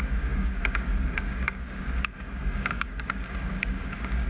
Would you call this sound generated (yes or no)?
yes